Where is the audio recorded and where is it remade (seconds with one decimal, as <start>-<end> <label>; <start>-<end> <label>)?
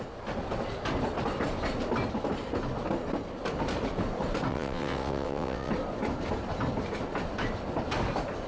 0.0-4.5 recorded; 4.5-5.7 remade; 5.7-8.5 recorded